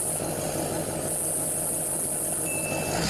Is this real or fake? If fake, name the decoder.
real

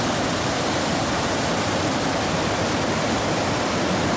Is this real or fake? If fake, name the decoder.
real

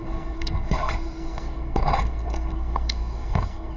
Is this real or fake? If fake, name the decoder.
fake, codec, SNAC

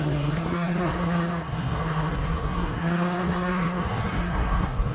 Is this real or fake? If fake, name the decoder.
fake, codec, SNAC